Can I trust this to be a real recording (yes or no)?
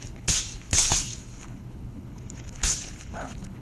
no